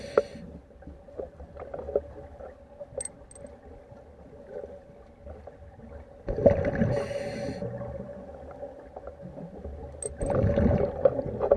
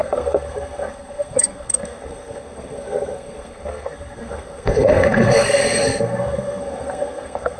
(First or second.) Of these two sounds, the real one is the first